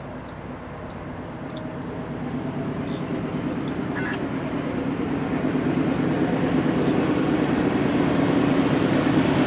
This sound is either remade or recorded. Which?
recorded